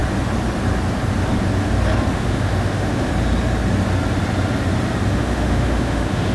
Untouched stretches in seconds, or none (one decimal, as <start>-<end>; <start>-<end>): 0.0-2.1; 3.1-5.1